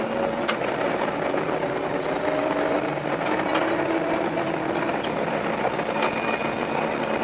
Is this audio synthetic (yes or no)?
no